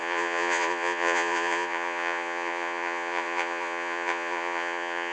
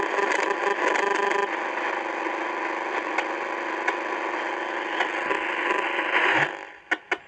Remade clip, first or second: first